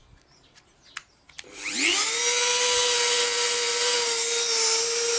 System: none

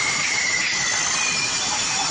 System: none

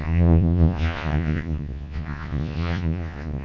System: vocoder, Vocos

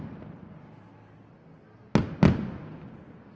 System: none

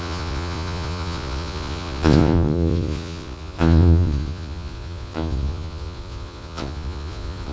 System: vocoder, Vocos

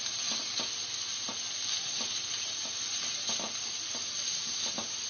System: none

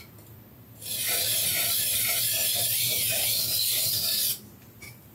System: none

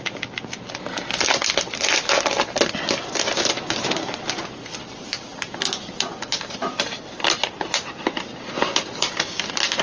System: none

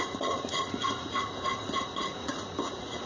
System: vocoder, Vocos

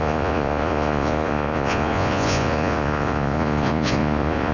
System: vocoder, Vocos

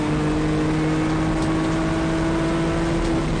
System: none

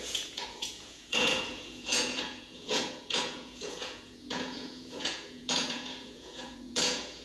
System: vocoder, Vocos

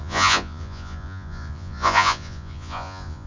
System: vocoder, Vocos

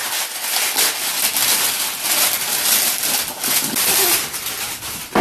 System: none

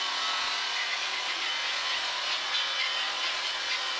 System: vocoder, Vocos